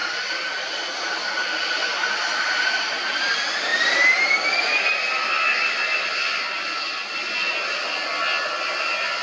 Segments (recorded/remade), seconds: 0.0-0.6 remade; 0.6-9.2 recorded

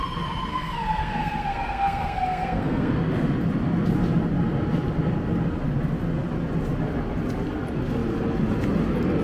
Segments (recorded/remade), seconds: 0.0-0.5 recorded; 0.5-2.9 remade; 2.9-9.2 recorded

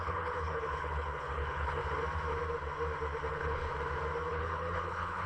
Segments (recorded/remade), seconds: 0.0-1.8 remade; 1.8-3.3 recorded; 3.3-3.7 remade; 3.7-4.3 recorded; 4.3-5.3 remade

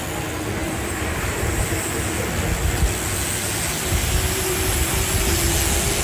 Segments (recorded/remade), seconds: 0.0-0.6 recorded; 0.6-1.6 remade; 1.6-6.0 recorded

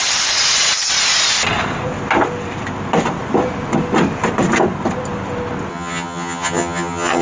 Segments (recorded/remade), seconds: 0.0-5.7 recorded; 5.7-7.2 remade

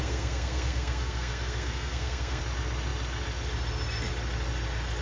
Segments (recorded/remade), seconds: 0.0-2.4 remade; 2.4-5.0 recorded

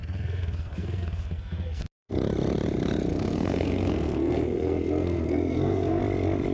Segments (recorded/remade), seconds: 0.0-2.1 remade; 2.1-3.1 recorded; 3.1-6.0 remade; 6.0-6.5 recorded